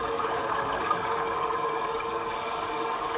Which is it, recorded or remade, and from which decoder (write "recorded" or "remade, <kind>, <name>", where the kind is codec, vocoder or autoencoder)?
remade, codec, DAC